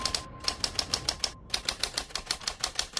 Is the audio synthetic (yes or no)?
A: no